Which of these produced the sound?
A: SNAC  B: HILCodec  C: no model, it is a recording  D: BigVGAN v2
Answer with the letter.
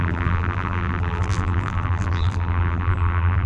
D